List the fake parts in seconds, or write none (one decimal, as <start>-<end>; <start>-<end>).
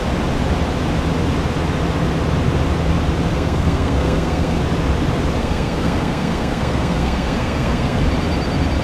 3.3-4.6; 5.4-8.0